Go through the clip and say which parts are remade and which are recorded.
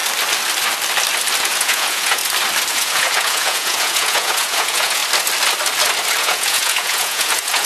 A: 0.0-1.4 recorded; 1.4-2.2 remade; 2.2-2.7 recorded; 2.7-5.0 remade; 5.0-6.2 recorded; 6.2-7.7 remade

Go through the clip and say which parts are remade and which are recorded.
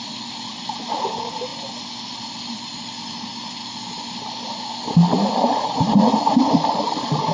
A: 0.0-5.5 recorded; 5.5-6.2 remade; 6.2-7.3 recorded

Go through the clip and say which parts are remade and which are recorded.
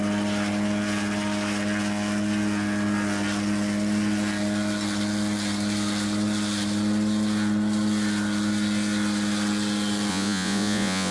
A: 0.0-10.1 recorded; 10.1-11.1 remade